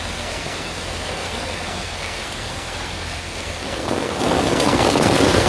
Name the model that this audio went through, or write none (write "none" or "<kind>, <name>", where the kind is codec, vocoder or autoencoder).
codec, SNAC